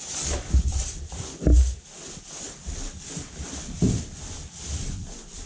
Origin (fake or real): real